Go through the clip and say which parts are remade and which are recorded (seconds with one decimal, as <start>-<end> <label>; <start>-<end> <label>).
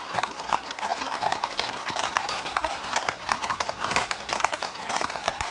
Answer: 0.0-5.5 remade